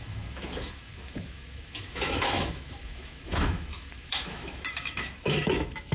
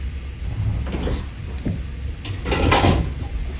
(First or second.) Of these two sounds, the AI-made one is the first